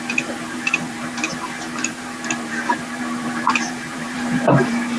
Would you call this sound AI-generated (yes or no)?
yes